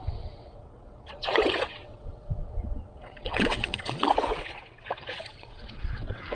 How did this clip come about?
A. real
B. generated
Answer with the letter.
B